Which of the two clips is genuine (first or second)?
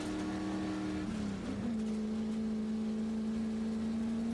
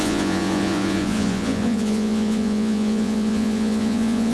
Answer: first